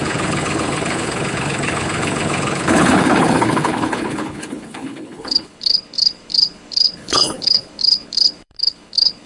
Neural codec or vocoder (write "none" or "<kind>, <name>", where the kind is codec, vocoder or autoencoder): codec, HILCodec